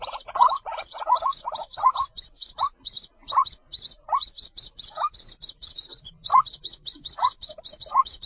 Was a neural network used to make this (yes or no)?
yes